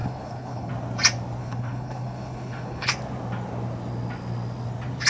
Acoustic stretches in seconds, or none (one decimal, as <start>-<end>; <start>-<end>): 0.7-1.4; 2.9-5.1